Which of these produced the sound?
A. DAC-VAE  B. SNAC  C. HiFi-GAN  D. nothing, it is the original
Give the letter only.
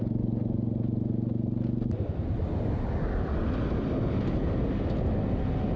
D